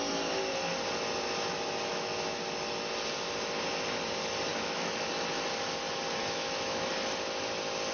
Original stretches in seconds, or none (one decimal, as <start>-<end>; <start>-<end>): 0.0-1.9; 2.4-4.5; 5.1-6.2; 6.9-7.9